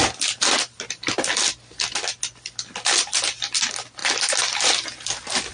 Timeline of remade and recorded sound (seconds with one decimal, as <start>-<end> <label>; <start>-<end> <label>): 0.0-5.5 recorded